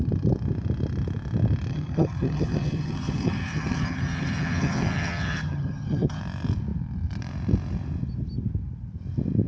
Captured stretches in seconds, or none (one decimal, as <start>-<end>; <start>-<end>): 0.0-1.7; 6.2-9.5